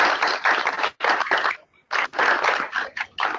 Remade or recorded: recorded